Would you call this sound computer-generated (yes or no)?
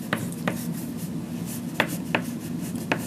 no